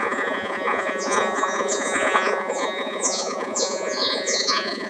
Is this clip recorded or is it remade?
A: remade